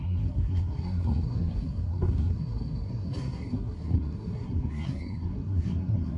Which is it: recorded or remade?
remade